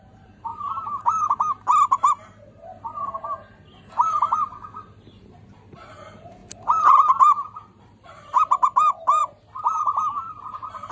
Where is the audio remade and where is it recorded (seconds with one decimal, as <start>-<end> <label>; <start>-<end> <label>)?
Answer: 0.0-0.5 remade; 0.5-2.1 recorded; 2.1-2.7 remade; 2.7-5.9 recorded; 5.9-6.4 remade; 6.4-6.9 recorded; 6.9-9.2 remade; 9.2-9.8 recorded; 9.8-10.9 remade